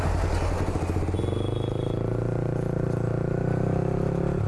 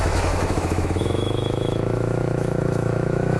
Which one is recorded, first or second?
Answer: first